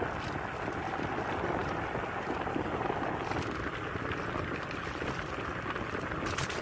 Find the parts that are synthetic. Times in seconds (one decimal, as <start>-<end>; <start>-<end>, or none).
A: none